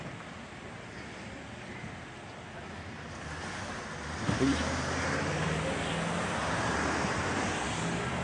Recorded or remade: recorded